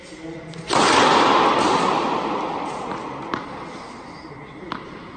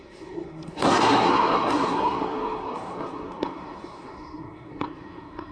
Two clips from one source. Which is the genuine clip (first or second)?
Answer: first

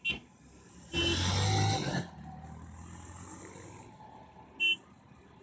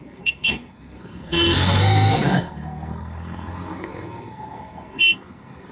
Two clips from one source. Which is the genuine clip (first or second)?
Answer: first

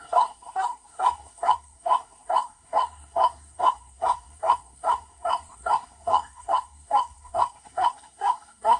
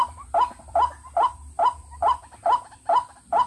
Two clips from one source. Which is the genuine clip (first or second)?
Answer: second